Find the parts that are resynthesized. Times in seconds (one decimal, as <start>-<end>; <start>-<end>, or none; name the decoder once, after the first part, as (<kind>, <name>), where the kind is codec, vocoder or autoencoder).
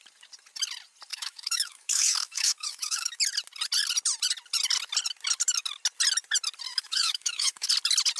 1.1-3.2 (autoencoder, DAC-VAE); 6.7-7.7